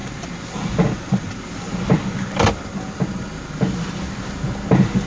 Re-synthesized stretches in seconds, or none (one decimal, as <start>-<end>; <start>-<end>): none